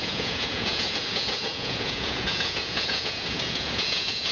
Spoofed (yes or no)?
yes